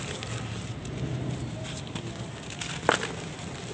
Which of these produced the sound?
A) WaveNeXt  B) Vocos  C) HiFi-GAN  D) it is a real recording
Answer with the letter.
D